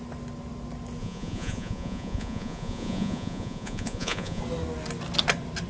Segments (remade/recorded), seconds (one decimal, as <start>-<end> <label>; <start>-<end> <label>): 0.0-1.0 recorded; 1.0-4.4 remade; 4.4-5.7 recorded